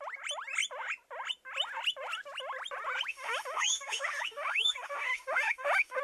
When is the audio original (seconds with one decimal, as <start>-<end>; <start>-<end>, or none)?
0.0-3.1